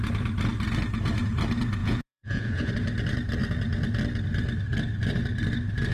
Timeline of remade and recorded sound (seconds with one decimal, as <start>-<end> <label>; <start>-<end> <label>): 0.0-1.8 recorded; 1.8-2.7 remade; 2.7-5.9 recorded